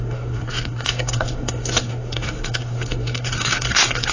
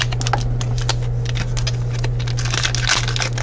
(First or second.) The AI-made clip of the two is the first